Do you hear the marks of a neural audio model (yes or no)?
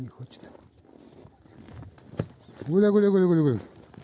no